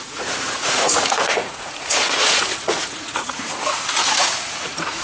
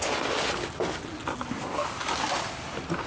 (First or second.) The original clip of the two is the second